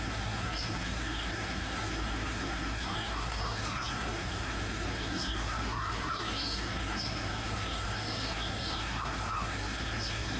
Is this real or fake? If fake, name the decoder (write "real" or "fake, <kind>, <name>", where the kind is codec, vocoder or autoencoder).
fake, codec, SNAC